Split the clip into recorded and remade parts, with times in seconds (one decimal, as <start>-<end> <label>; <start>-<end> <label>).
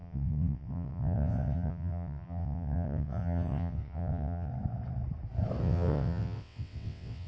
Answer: 0.0-4.5 remade; 4.5-5.6 recorded; 5.6-7.3 remade